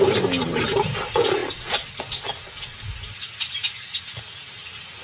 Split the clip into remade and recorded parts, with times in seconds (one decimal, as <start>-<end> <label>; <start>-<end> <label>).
0.0-5.0 recorded